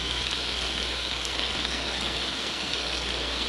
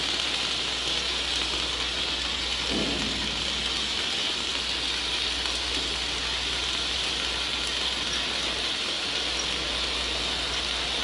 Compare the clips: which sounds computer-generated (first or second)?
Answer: first